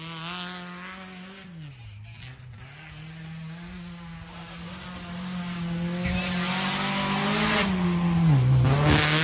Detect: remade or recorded recorded